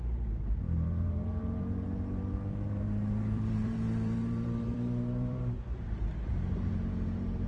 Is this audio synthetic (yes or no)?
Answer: yes